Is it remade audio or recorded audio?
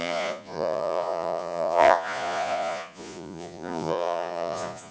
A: remade